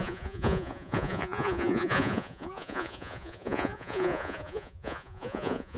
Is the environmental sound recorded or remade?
remade